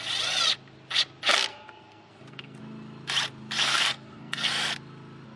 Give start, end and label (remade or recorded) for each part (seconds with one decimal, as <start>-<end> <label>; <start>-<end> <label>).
0.0-1.5 recorded; 1.5-2.6 remade; 2.6-3.6 recorded; 3.6-4.5 remade; 4.5-5.4 recorded